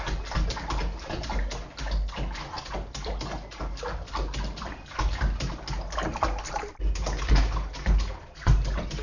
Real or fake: real